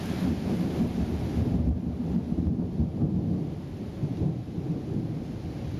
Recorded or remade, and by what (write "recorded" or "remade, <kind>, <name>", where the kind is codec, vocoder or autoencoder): recorded